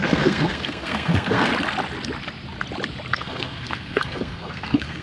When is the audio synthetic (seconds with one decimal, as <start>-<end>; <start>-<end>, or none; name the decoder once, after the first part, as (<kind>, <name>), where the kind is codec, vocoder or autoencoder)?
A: 0.0-1.5 (codec, SNAC); 3.1-5.0